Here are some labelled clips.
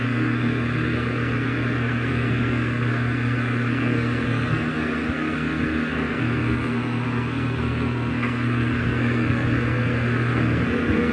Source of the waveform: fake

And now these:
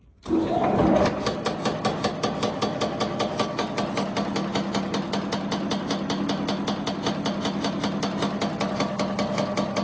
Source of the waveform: real